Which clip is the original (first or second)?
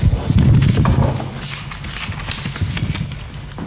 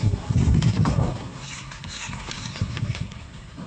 first